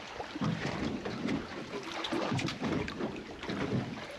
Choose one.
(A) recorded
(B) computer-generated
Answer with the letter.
A